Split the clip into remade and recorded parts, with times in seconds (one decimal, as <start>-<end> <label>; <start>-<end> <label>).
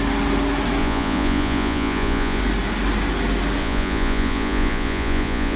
0.0-0.8 recorded; 0.8-2.4 remade; 2.4-3.6 recorded; 3.6-5.6 remade